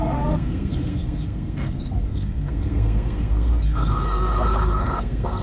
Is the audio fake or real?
fake